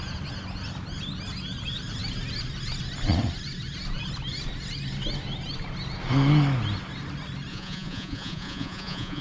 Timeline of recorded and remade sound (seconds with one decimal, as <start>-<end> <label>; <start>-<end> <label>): 0.0-7.5 recorded; 7.5-9.2 remade